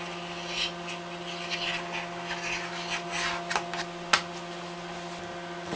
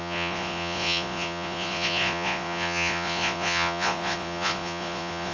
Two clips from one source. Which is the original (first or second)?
first